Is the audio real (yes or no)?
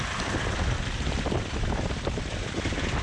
yes